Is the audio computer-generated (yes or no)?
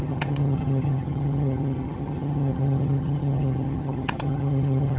yes